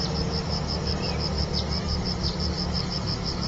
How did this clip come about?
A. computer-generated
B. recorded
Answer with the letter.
A